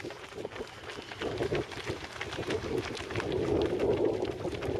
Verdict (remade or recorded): recorded